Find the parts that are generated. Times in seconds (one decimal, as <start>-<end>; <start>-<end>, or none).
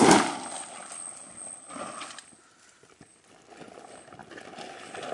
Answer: none